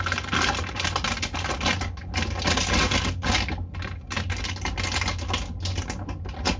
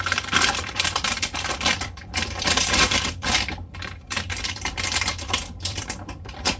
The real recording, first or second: first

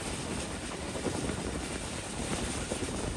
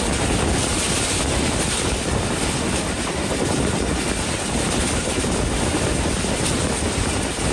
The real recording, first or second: second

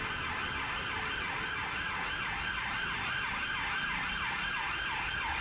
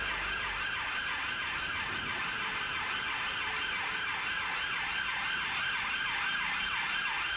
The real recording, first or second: first